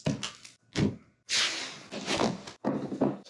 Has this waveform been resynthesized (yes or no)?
no